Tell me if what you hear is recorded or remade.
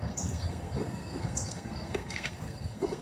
remade